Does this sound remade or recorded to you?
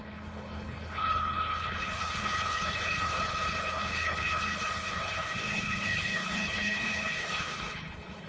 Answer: remade